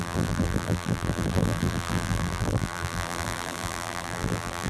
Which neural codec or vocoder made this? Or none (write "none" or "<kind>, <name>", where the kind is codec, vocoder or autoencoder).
vocoder, BigVGAN v2